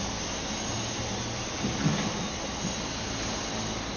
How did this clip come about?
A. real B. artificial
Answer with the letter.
A